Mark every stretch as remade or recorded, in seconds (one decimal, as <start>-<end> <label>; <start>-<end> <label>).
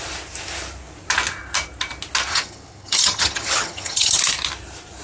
0.0-2.3 recorded; 2.3-4.2 remade; 4.2-5.0 recorded